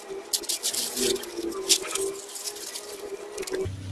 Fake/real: real